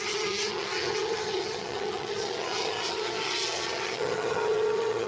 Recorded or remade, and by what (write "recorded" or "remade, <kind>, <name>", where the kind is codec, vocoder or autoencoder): remade, vocoder, HiFi-GAN